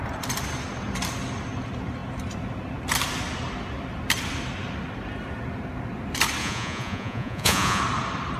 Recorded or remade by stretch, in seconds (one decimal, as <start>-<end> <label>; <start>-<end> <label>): 0.0-6.4 recorded; 6.4-7.8 remade; 7.8-8.4 recorded